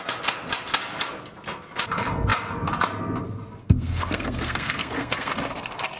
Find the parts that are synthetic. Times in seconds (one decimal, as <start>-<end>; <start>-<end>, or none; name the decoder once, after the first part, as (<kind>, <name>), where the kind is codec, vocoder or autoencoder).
3.6-5.3 (codec, SNAC)